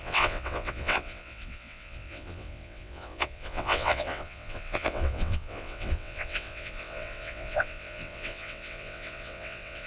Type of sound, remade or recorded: remade